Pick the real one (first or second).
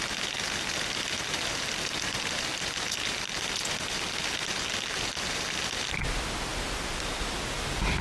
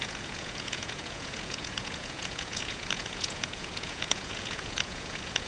first